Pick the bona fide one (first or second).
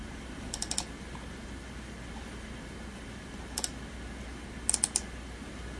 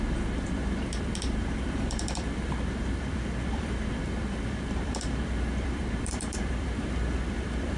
first